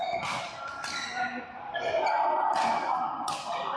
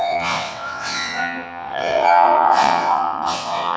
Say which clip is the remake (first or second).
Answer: second